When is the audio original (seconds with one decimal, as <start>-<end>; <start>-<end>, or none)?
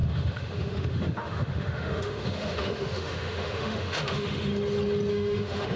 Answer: 4.5-5.1